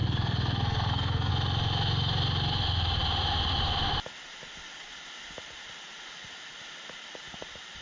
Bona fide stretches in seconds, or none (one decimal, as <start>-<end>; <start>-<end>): 1.3-7.8